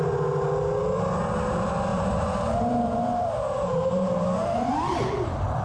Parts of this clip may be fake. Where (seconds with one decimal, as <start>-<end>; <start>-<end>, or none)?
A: 1.9-5.6